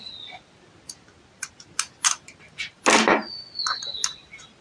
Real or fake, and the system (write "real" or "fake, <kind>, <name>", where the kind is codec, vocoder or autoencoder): real